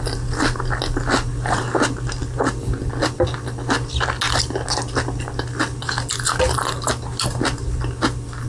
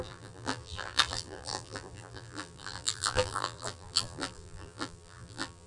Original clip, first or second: first